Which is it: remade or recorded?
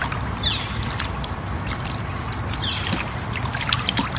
recorded